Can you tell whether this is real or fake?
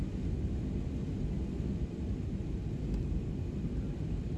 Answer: real